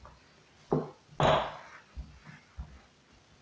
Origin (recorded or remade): recorded